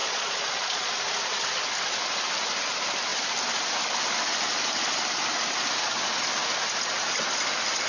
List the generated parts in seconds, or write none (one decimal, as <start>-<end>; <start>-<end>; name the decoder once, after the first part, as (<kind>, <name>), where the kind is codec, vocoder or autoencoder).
0.0-0.9 (vocoder, Vocos)